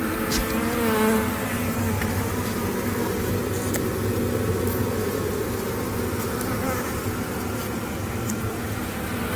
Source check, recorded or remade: recorded